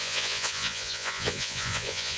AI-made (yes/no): yes